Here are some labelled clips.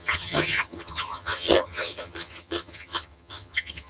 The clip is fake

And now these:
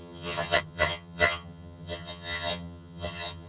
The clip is fake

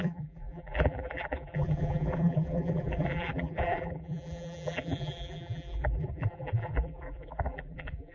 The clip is fake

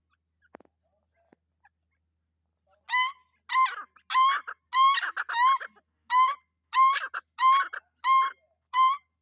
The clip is real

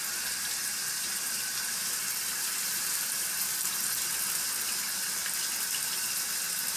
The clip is real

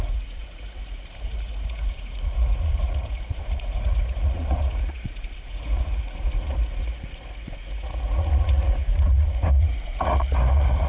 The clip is fake